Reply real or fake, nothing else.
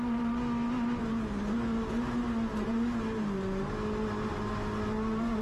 real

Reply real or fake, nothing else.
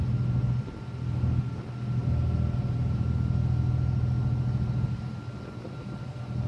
real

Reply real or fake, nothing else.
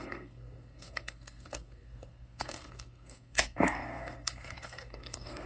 fake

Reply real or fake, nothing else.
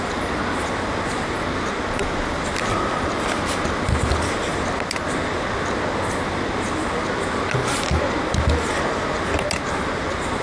real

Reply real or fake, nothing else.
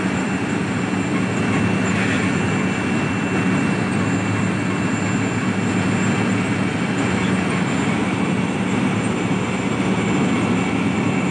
real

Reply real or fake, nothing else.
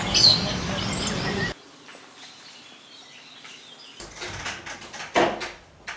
real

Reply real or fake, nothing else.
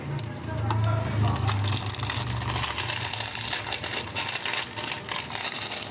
real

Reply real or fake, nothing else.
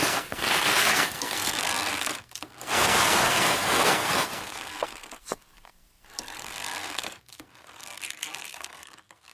fake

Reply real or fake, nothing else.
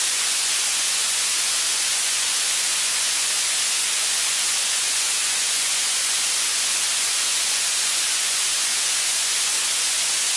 fake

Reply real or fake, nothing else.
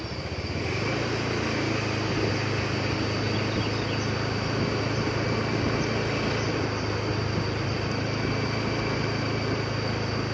real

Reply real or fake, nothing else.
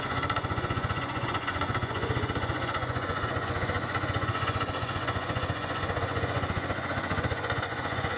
fake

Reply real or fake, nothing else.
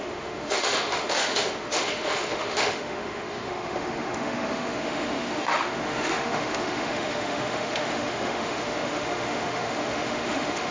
fake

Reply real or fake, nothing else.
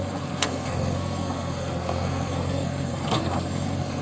fake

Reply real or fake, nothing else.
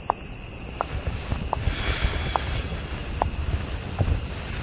real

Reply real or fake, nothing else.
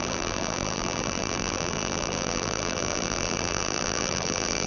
fake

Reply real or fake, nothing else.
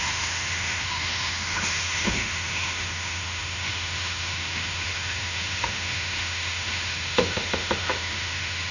fake